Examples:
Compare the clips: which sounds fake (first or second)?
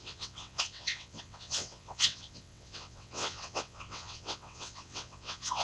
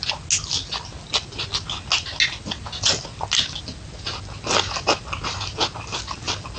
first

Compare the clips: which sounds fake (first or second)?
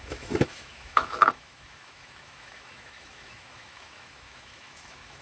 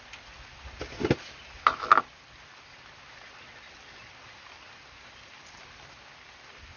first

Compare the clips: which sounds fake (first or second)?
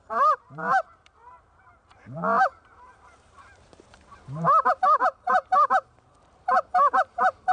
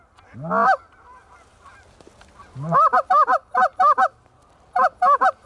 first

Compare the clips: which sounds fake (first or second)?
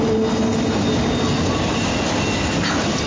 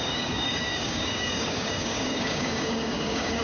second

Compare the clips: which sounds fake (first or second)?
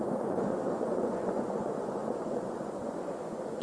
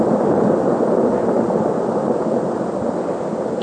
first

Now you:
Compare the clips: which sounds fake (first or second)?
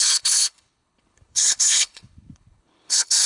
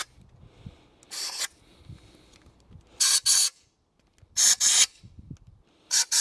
first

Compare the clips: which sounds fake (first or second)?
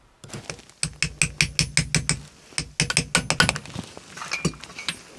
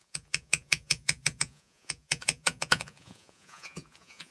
second